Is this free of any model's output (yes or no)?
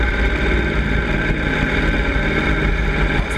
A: no